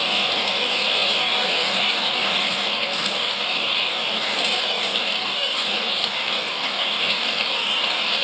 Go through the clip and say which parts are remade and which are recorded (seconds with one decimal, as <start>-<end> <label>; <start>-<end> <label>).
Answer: 0.0-8.2 remade